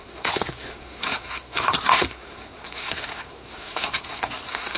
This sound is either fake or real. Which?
fake